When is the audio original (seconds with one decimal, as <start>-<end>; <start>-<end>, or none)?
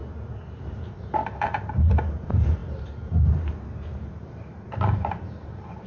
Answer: 0.0-0.8; 2.6-3.4